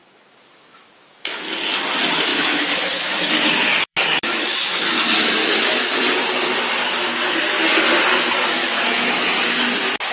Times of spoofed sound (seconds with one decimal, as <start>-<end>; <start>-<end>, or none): 0.0-1.5; 2.3-4.8; 5.4-6.0; 8.6-9.4